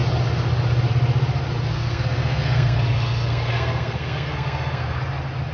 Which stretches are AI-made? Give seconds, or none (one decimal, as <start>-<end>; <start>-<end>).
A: 1.7-5.0